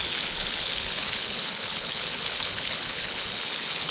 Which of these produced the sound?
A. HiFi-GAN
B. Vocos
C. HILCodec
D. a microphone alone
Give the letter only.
C